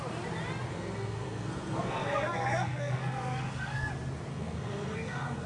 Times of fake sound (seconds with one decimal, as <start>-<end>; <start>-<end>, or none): 0.7-3.9; 4.3-5.5